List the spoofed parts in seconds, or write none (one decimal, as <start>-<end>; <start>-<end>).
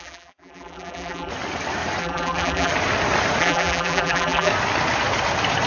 0.0-1.3; 2.0-2.7; 3.4-4.5